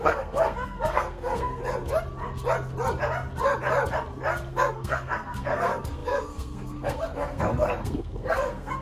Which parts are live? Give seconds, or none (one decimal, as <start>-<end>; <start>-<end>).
1.6-4.5